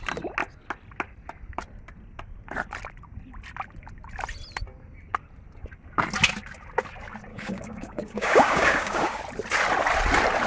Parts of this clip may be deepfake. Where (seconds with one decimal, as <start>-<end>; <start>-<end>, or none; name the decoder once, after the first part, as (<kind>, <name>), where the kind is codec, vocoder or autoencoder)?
7.3-9.2 (codec, DAC)